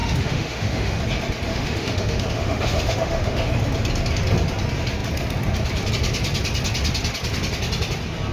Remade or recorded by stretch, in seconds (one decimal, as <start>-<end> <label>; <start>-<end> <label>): 0.0-1.0 remade; 1.0-1.5 recorded; 1.5-3.5 remade; 3.5-8.3 recorded